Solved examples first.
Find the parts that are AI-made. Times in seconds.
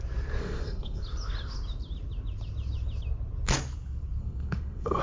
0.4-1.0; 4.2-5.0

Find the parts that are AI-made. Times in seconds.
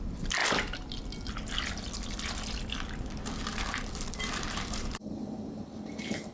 0.0-0.4; 4.2-6.3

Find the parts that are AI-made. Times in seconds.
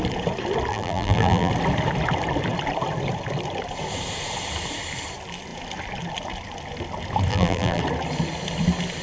0.7-1.5; 7.3-7.8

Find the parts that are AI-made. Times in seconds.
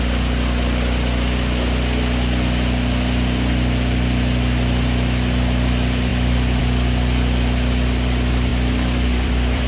8.5-9.7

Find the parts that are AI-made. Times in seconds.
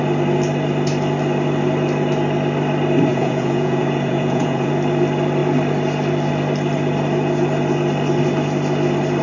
3.1-4.7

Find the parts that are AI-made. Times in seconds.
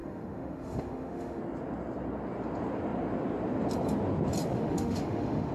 0.0-1.4; 4.5-5.5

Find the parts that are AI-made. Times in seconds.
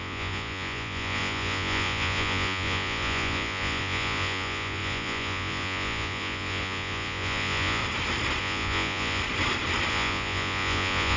0.0-7.8; 8.4-9.2; 9.9-11.2